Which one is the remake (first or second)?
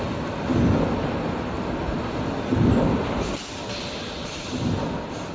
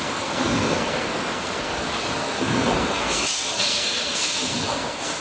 second